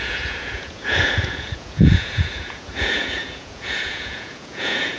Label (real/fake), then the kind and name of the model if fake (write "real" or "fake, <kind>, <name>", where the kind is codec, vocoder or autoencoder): fake, vocoder, Vocos